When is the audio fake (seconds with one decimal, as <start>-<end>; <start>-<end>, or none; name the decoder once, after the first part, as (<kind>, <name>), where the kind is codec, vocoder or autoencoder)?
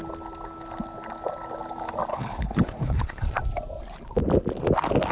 2.1-3.3 (codec, HILCodec)